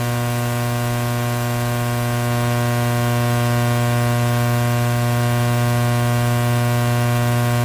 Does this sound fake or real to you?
real